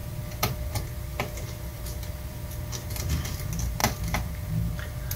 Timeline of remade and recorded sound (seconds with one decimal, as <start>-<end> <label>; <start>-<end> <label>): 0.0-3.1 remade; 3.1-3.8 recorded; 3.8-4.5 remade; 4.5-5.2 recorded